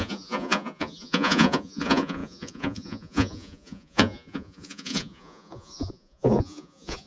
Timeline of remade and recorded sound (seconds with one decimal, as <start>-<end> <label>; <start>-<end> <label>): 0.0-7.1 remade